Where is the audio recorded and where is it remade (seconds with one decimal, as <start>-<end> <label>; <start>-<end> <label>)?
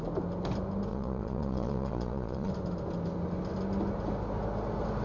0.0-0.9 recorded; 0.9-2.5 remade; 2.5-5.0 recorded